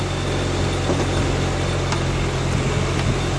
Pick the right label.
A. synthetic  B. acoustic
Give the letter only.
B